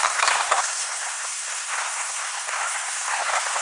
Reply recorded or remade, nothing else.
remade